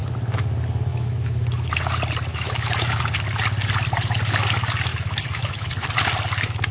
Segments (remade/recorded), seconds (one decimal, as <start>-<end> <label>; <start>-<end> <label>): 0.0-0.9 recorded; 0.9-1.7 remade; 1.7-2.3 recorded; 2.3-3.0 remade; 3.0-4.9 recorded; 4.9-5.7 remade; 5.7-6.7 recorded